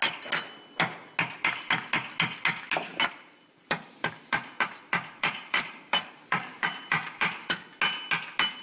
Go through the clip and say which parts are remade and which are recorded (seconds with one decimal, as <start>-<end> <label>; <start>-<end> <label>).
0.0-2.9 recorded; 2.9-7.3 remade; 7.3-8.6 recorded